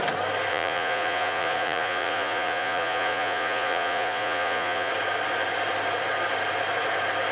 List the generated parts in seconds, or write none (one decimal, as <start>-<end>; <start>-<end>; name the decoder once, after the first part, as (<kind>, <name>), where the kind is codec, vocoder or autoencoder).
0.5-4.9 (vocoder, Vocos)